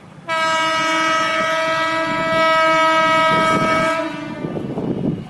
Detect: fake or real real